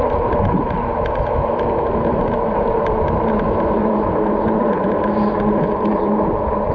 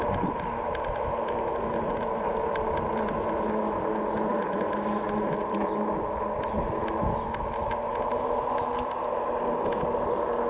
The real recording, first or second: second